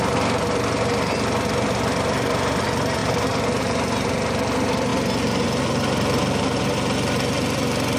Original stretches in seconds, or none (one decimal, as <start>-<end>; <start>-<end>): 0.0-8.0